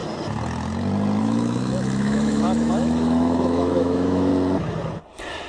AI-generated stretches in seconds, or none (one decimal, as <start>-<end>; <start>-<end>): 1.2-4.3